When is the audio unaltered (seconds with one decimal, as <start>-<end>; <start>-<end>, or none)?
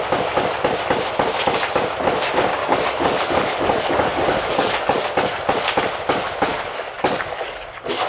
0.0-2.6; 5.1-6.5